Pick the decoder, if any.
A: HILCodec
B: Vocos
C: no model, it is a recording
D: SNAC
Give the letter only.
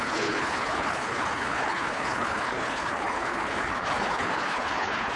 A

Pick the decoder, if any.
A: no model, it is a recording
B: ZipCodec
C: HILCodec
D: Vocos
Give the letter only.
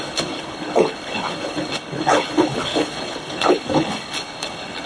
C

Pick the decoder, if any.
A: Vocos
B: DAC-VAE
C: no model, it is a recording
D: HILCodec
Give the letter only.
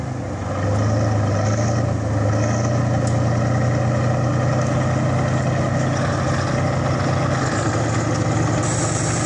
C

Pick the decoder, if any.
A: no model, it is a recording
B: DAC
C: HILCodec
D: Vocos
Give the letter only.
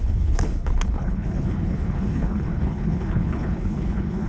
C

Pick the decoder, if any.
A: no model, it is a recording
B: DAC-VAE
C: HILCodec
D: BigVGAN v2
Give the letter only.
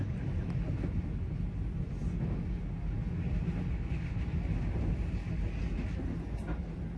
A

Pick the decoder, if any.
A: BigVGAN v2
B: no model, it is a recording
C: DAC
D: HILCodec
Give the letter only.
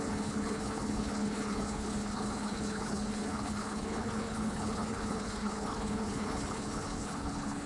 D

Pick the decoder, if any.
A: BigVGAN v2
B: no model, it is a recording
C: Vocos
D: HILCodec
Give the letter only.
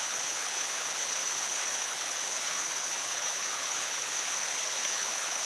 D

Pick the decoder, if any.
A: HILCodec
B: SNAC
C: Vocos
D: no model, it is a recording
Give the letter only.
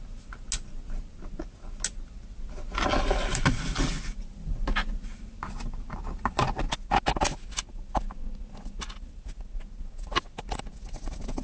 D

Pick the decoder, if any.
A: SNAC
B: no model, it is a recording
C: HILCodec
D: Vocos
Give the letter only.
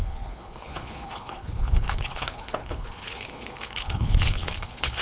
C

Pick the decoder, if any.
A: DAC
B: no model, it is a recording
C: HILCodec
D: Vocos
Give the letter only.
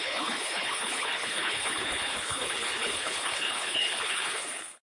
C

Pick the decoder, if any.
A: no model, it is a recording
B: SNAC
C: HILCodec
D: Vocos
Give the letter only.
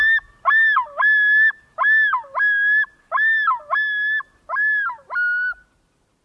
A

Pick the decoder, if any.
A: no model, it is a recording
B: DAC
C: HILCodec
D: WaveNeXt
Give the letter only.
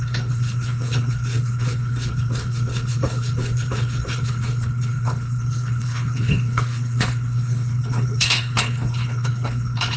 C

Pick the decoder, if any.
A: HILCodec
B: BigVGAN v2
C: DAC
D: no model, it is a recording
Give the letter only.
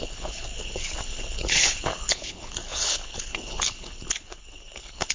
A